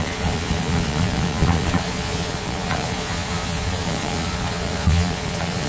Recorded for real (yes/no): no